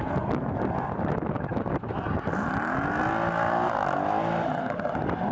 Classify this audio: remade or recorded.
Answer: recorded